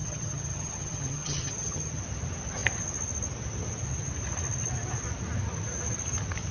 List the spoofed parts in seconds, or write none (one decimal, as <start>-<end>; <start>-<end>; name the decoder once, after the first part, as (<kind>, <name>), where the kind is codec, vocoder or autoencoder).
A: 0.0-2.0 (vocoder, HiFi-GAN)